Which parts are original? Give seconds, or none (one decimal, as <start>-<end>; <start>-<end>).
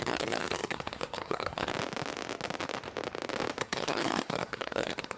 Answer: 1.7-3.6